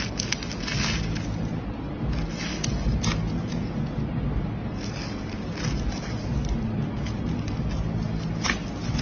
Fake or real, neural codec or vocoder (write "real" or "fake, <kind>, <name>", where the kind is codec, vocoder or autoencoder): real